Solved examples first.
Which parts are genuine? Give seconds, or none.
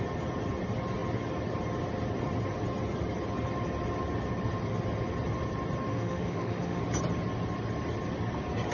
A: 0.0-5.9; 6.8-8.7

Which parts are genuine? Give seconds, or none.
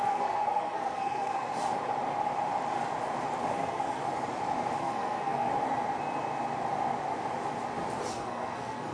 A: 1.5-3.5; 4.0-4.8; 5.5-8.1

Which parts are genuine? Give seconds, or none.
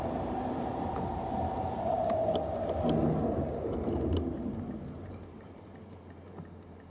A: 2.2-3.2; 4.1-4.7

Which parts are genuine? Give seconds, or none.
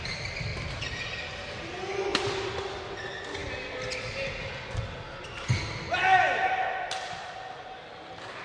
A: 0.0-8.4